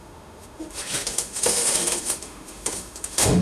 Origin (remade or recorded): remade